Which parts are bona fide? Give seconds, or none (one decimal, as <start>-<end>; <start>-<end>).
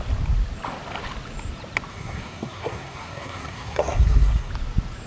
0.0-1.9; 4.5-5.1